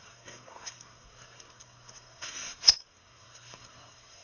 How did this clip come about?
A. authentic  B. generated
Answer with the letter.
B